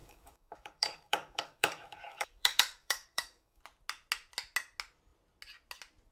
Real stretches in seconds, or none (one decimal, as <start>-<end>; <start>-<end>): 3.6-6.1